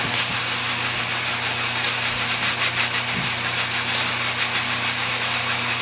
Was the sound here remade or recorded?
recorded